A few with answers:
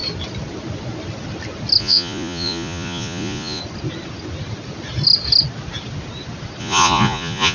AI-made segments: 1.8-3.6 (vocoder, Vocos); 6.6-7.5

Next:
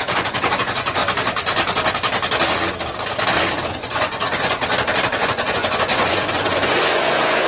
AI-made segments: 0.0-1.0 (vocoder, Vocos); 3.7-4.6; 5.1-7.5

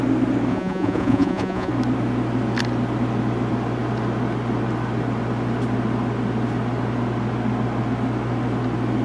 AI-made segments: 0.5-1.7 (vocoder, Vocos)